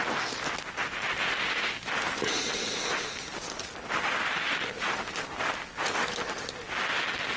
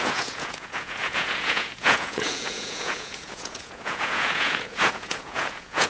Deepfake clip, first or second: second